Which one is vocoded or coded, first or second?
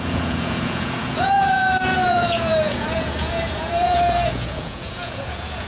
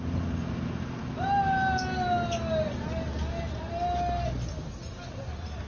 first